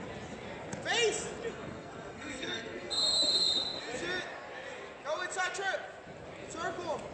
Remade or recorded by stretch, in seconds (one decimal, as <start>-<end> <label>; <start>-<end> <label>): 0.0-1.5 recorded; 1.5-2.9 remade; 2.9-7.1 recorded